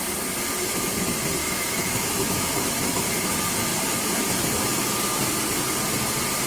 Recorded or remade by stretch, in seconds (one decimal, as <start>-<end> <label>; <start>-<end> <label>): 0.0-1.4 recorded; 1.4-3.3 remade; 3.3-6.5 recorded